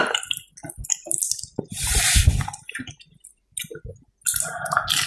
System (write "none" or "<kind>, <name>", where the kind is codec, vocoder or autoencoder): none